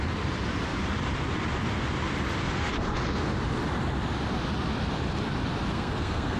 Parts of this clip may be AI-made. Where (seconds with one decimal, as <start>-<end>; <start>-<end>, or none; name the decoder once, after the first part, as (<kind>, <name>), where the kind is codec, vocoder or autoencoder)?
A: 5.7-6.4 (codec, SNAC)